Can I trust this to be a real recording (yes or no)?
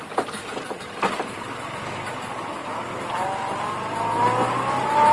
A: yes